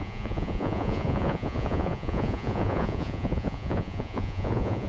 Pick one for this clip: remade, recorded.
remade